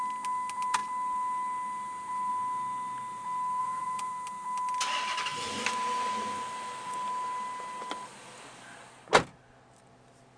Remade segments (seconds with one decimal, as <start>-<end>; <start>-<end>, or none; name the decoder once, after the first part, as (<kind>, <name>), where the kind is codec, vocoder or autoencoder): 3.6-4.1 (vocoder, Vocos)